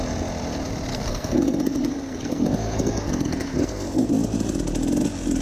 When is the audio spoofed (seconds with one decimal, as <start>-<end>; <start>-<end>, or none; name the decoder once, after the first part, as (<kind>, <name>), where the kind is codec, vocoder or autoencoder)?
0.9-4.1 (codec, SNAC)